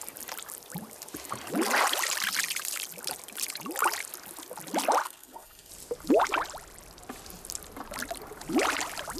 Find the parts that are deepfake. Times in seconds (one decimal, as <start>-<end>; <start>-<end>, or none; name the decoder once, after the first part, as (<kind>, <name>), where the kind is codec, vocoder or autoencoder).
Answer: 5.0-5.7 (codec, SNAC)